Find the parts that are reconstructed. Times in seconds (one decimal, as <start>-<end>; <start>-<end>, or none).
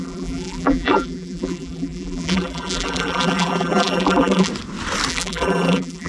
0.0-4.5; 5.1-6.1